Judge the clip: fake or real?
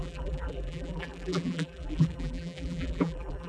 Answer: fake